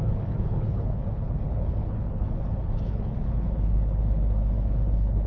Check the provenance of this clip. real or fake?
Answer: fake